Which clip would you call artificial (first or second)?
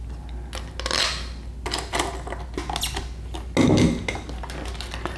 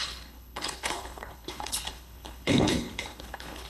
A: second